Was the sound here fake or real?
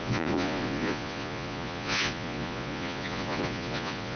fake